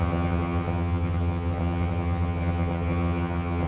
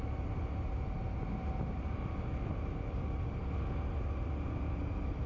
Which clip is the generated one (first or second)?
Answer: first